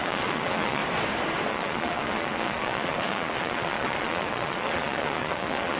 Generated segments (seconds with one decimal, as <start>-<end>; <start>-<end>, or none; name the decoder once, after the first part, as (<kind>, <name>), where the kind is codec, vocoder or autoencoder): 0.0-0.8 (vocoder, Vocos); 1.5-5.8

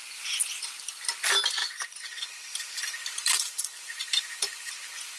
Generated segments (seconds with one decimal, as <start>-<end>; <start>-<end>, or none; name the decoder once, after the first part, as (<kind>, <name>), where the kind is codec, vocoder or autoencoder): 1.6-4.7 (vocoder, BigVGAN v2)

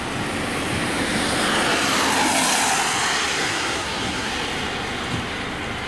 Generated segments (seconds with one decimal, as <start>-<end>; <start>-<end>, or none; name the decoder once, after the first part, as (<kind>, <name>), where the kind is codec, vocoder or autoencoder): 3.4-4.3 (codec, SNAC)

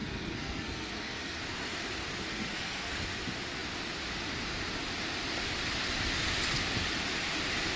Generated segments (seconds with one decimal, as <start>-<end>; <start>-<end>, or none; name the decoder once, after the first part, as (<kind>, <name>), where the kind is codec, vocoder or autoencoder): 0.0-1.4 (codec, SNAC); 2.3-2.9

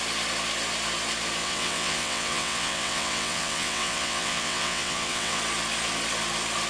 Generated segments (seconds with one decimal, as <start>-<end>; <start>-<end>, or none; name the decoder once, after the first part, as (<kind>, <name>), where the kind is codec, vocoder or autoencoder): 1.4-5.4 (vocoder, WaveNeXt)

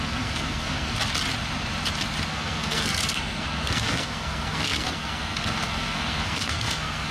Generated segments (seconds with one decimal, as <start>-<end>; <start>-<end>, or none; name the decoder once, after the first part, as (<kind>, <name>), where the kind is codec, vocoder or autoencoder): 0.0-1.0 (codec, SNAC); 2.3-7.1